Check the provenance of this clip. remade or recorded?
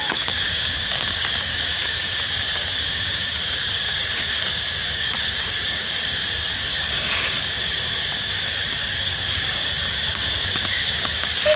remade